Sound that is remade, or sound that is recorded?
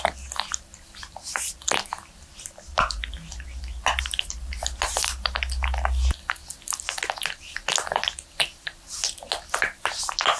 recorded